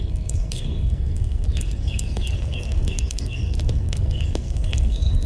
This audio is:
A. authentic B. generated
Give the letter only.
B